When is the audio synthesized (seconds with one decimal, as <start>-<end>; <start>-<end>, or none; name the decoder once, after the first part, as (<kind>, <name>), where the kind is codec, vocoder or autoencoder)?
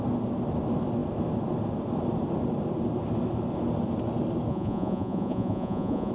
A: 4.5-6.1 (vocoder, Vocos)